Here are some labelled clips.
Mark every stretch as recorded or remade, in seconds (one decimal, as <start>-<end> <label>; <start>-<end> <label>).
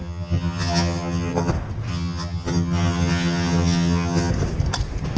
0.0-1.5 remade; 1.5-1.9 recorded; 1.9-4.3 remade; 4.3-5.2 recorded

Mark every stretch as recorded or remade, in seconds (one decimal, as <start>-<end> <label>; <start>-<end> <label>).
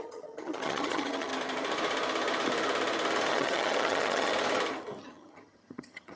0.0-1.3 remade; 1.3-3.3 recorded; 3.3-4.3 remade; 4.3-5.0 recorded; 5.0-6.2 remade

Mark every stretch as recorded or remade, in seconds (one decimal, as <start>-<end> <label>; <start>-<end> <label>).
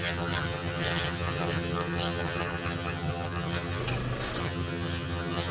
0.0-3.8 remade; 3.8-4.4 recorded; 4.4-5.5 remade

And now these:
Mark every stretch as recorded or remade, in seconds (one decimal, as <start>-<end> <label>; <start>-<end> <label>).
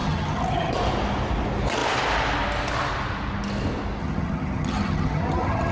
0.0-0.7 remade; 0.7-4.0 recorded; 4.0-5.7 remade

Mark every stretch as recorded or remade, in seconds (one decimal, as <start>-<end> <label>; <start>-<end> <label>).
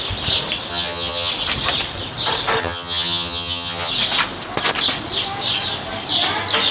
0.0-0.7 recorded; 0.7-1.3 remade; 1.3-2.6 recorded; 2.6-3.9 remade; 3.9-6.7 recorded